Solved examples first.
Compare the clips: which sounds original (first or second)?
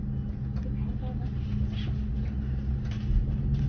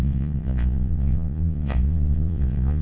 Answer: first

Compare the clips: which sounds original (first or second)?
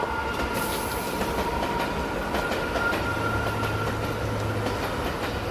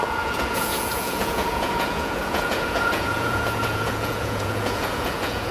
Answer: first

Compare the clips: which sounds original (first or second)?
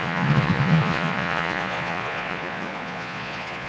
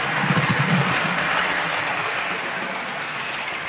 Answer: second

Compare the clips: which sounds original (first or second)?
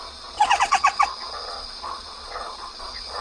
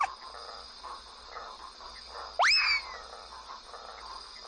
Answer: second